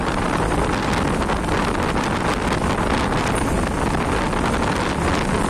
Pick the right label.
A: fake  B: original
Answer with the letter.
B